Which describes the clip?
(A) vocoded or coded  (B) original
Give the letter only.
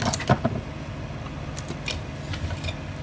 B